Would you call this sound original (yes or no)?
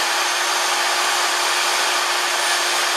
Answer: yes